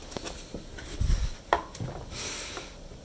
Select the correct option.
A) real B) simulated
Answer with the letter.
A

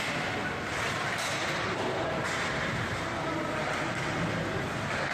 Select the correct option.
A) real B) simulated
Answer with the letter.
A